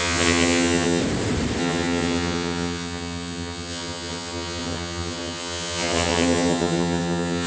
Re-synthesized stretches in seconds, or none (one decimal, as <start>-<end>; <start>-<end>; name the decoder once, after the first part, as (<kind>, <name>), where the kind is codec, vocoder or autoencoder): 0.0-1.0 (vocoder, HiFi-GAN); 1.6-7.5